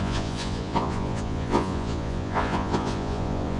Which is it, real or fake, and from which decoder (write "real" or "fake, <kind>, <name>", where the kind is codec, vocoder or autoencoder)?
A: fake, vocoder, Vocos